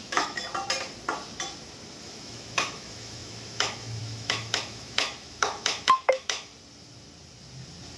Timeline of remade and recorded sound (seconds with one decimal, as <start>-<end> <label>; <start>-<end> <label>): 0.0-0.4 remade; 0.4-2.0 recorded; 2.0-6.5 remade; 6.5-8.0 recorded